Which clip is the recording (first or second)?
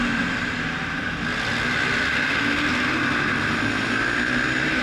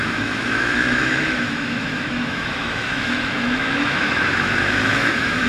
first